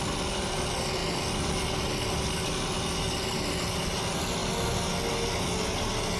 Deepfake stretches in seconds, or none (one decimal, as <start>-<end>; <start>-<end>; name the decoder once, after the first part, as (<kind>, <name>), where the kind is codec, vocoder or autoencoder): none